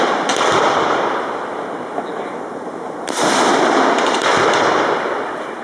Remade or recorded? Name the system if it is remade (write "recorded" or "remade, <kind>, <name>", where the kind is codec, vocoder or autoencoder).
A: recorded